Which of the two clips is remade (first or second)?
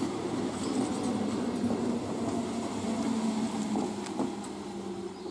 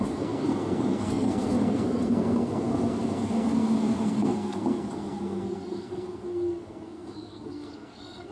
second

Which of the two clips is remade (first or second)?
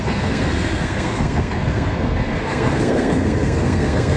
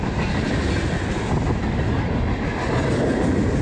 first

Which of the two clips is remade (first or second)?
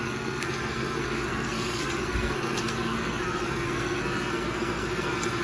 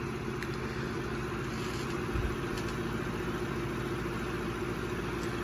first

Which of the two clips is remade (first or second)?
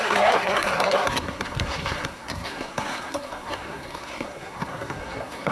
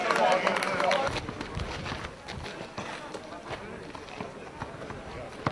first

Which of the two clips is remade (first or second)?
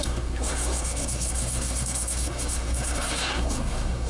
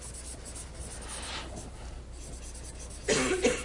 first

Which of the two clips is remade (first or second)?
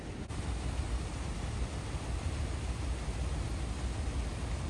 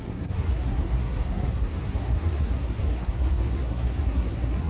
second